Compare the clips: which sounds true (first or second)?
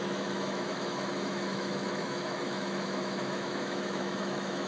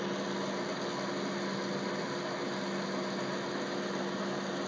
second